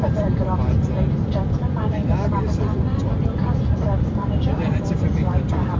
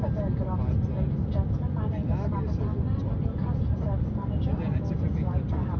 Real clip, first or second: second